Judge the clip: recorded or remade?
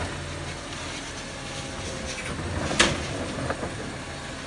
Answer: recorded